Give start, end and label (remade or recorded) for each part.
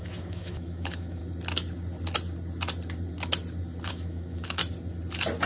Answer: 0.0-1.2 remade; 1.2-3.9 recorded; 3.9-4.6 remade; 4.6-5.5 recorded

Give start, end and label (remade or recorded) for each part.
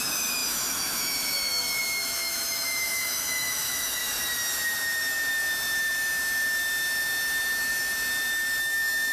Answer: 0.0-4.0 remade; 4.0-8.6 recorded; 8.6-9.1 remade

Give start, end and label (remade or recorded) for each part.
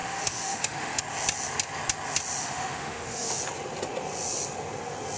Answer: 0.0-1.0 remade; 1.0-2.4 recorded; 2.4-3.4 remade; 3.4-5.2 recorded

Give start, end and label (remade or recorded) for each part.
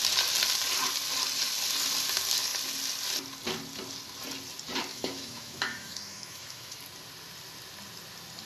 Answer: 0.0-4.9 recorded; 4.9-6.8 remade; 6.8-8.5 recorded